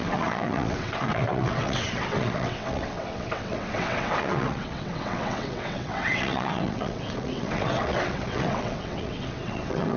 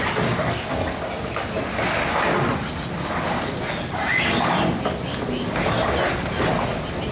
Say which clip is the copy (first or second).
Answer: first